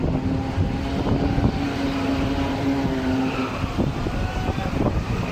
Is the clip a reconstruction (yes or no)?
no